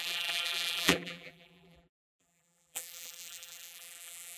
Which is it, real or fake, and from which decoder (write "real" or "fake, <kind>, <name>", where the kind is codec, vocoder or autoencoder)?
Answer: fake, vocoder, BigVGAN v2